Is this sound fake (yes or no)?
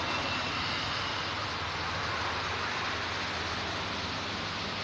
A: no